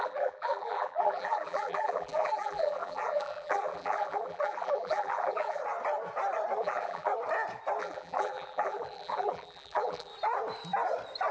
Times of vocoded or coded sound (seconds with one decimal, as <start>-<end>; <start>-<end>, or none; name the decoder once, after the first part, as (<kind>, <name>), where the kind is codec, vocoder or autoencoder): 0.0-5.6 (vocoder, BigVGAN v2); 6.6-7.1; 7.8-10.1